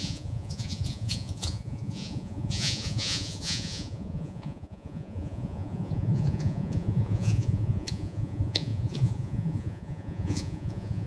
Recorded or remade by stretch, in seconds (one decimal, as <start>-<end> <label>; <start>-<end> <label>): 0.0-11.1 remade